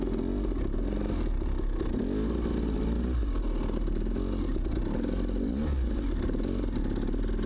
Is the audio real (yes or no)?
yes